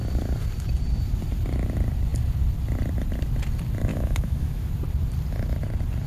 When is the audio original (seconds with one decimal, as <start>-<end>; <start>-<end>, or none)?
0.0-3.9; 4.7-6.1